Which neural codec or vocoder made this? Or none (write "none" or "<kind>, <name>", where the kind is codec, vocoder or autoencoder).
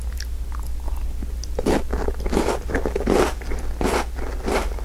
none